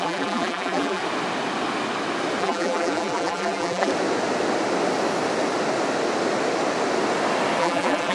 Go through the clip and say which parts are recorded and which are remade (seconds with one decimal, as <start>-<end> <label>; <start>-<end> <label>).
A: 0.0-1.0 remade; 1.0-2.4 recorded; 2.4-3.9 remade; 3.9-7.6 recorded; 7.6-8.1 remade